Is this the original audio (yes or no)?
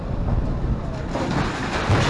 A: yes